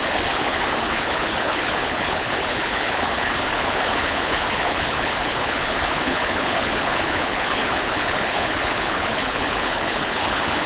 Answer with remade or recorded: remade